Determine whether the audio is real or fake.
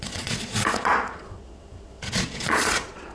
fake